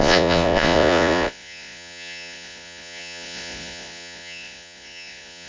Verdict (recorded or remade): remade